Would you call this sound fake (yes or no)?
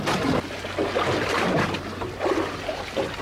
no